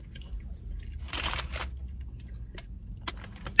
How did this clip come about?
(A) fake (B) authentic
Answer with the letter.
B